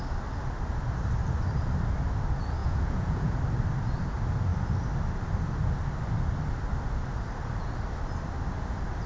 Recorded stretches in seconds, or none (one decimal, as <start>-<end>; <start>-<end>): 0.0-2.6; 3.4-9.1